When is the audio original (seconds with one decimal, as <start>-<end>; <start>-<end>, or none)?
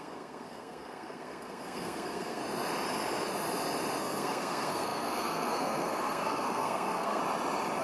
2.4-4.0; 7.2-7.8